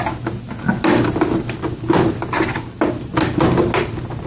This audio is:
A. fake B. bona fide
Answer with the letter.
B